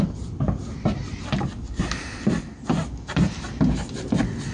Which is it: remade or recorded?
recorded